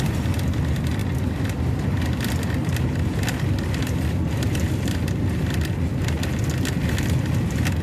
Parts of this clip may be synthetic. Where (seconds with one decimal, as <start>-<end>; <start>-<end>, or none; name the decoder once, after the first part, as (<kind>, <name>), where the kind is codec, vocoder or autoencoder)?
none